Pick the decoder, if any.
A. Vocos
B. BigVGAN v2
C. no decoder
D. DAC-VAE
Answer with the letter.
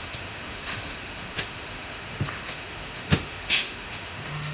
D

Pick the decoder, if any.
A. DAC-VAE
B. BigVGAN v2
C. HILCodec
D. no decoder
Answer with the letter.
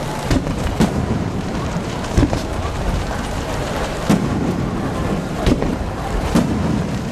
B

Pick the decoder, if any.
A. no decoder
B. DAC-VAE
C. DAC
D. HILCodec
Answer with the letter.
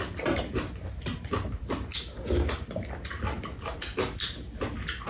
A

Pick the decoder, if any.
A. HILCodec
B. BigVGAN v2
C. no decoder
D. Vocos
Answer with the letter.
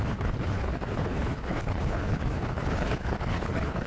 A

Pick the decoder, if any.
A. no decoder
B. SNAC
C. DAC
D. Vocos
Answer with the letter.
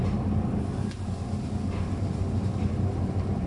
A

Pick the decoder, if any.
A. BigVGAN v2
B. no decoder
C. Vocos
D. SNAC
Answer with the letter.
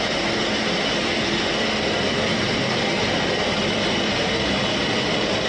B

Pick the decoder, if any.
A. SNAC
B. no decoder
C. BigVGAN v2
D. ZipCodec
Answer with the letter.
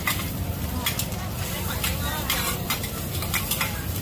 C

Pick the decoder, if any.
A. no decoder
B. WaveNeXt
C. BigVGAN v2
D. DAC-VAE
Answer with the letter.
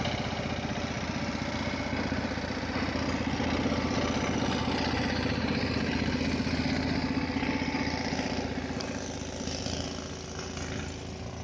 A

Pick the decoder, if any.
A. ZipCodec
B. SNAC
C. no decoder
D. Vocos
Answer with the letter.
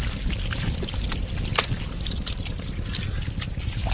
C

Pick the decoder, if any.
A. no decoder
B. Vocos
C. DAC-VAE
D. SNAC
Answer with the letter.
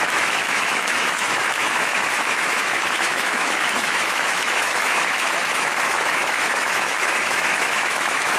C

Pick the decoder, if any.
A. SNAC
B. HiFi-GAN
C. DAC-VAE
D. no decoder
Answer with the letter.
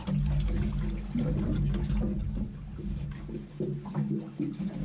D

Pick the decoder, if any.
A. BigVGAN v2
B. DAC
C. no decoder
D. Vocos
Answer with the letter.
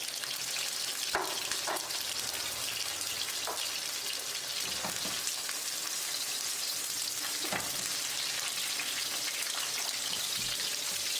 C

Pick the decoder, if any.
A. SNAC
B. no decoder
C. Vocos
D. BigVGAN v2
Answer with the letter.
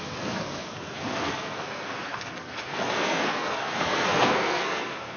A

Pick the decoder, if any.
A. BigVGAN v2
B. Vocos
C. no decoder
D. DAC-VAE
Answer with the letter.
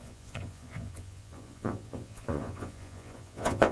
B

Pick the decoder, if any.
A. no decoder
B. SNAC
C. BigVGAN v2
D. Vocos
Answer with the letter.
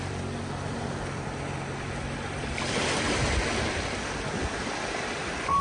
C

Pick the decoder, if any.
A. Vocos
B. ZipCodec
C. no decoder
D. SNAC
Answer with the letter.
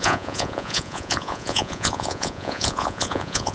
A